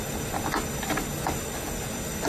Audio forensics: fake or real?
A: real